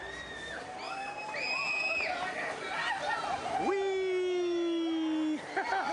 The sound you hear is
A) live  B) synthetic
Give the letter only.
A